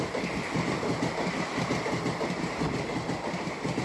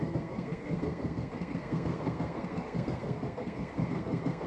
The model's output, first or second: second